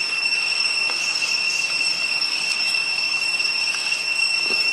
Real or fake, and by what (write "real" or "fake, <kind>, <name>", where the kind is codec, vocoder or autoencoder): fake, codec, DAC